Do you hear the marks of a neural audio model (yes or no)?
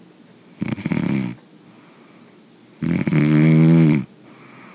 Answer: no